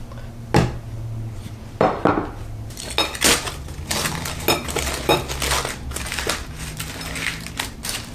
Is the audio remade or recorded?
recorded